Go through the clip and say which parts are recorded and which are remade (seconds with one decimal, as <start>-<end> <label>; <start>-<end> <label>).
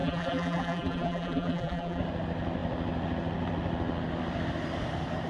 0.0-2.0 remade; 2.0-5.3 recorded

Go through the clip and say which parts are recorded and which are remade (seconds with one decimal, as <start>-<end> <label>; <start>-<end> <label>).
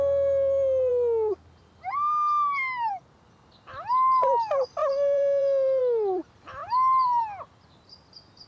0.0-4.8 recorded; 4.8-5.8 remade; 5.8-6.6 recorded; 6.6-7.2 remade; 7.2-8.5 recorded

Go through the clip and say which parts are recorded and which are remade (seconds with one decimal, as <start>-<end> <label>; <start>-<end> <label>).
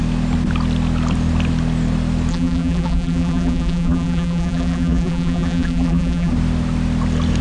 0.0-2.3 recorded; 2.3-6.3 remade; 6.3-7.4 recorded